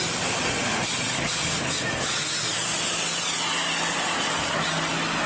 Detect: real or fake real